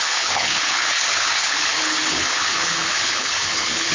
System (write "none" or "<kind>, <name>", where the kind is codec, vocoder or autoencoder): codec, HILCodec